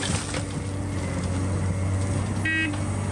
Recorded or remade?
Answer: recorded